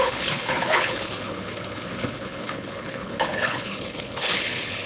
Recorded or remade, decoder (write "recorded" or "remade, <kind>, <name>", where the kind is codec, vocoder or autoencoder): remade, codec, HILCodec